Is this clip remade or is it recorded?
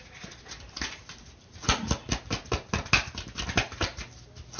recorded